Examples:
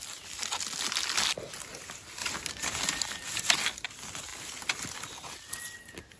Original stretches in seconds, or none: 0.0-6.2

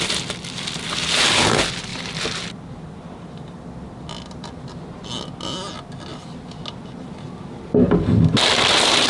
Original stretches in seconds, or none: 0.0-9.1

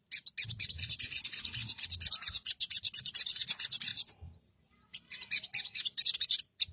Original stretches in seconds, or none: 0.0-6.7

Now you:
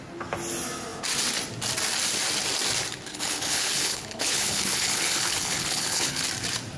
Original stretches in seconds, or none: 0.0-3.1; 6.2-6.8

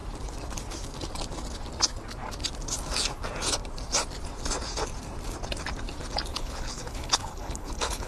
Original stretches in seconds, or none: 0.0-6.3